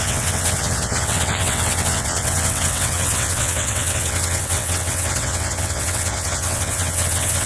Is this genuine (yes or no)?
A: no